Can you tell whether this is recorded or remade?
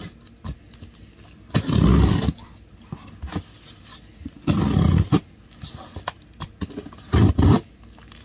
recorded